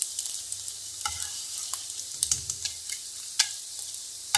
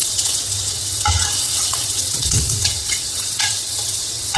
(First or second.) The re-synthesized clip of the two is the second